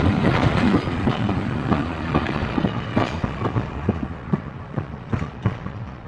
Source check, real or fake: fake